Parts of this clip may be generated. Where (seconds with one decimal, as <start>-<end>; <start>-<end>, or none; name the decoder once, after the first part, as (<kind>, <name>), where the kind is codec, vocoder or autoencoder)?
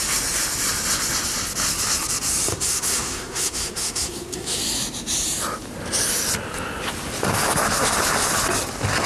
2.5-4.6 (codec, SNAC)